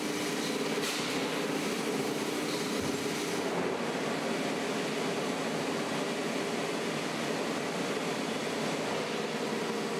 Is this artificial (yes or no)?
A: no